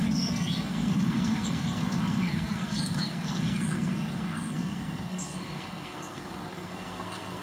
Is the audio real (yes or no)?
no